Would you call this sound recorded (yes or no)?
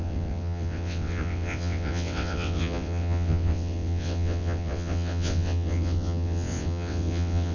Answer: no